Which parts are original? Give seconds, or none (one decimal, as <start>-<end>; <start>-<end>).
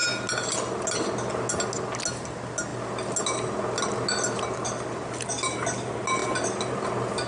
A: 0.0-7.3